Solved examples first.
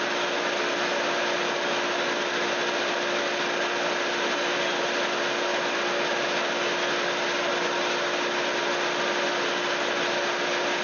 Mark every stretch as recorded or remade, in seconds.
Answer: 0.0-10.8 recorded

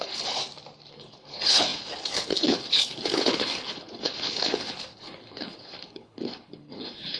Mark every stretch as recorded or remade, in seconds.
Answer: 0.0-0.4 remade; 0.4-0.9 recorded; 0.9-7.2 remade

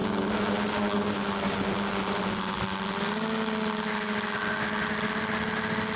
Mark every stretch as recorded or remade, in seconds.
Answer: 0.0-6.0 recorded